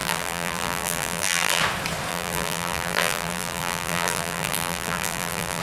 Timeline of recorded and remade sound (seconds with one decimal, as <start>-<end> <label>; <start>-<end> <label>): 0.0-1.6 remade; 1.6-2.1 recorded; 2.1-5.6 remade